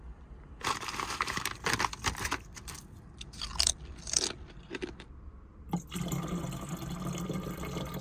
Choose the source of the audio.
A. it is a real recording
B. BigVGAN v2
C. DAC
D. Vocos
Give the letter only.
B